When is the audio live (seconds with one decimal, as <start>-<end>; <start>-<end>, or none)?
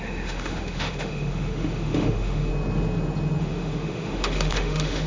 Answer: 2.5-3.4